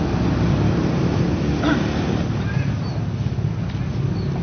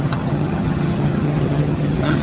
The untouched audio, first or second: first